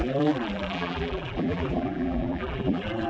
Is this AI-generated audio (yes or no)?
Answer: yes